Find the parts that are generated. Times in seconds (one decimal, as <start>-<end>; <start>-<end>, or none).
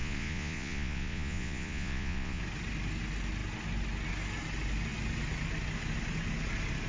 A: 0.0-2.4